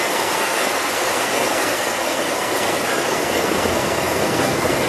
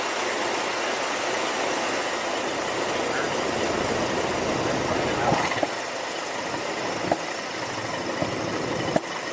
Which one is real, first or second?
second